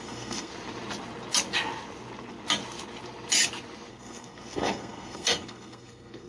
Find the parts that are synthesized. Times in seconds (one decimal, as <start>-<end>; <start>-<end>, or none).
0.0-0.5; 3.9-6.3